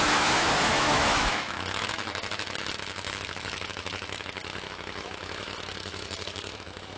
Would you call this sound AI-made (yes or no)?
yes